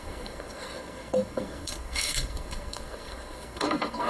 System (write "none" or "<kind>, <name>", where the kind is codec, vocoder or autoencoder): codec, SNAC